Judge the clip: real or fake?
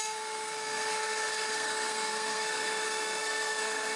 fake